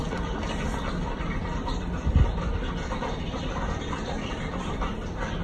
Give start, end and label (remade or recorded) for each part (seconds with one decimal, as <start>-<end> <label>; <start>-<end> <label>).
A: 0.0-5.4 recorded